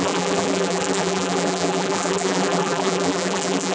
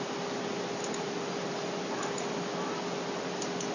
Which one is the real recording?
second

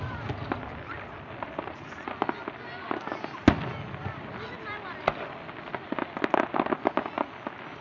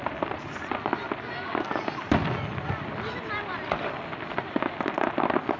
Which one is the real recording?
first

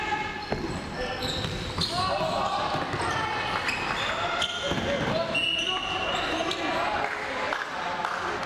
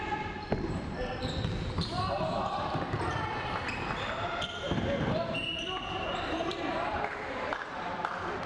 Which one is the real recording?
first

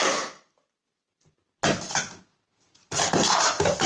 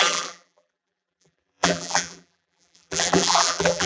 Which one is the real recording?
first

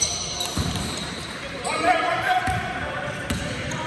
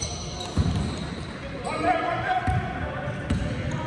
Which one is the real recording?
second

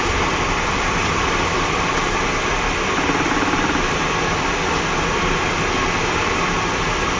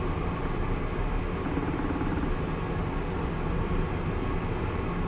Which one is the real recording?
second